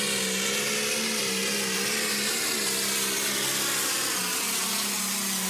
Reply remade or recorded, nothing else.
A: recorded